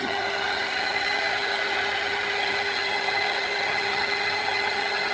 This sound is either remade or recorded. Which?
remade